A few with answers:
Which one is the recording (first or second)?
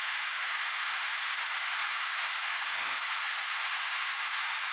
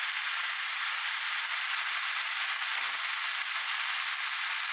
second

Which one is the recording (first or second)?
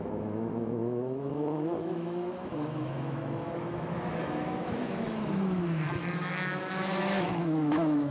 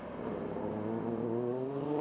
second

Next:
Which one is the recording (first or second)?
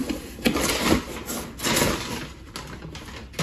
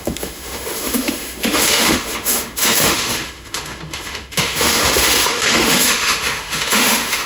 first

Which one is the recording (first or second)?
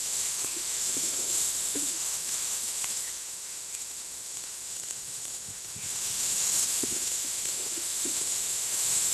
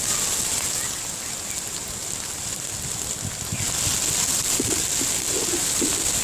second